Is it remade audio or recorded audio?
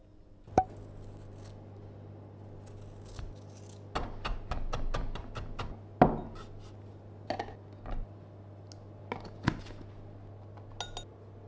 recorded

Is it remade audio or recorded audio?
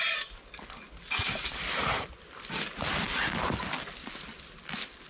recorded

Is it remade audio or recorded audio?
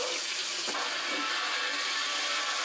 recorded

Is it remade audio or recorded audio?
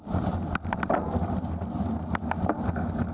recorded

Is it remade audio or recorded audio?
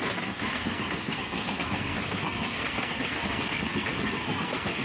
remade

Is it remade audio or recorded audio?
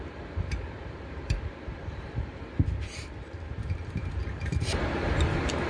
remade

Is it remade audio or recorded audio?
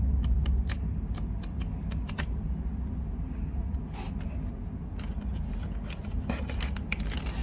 recorded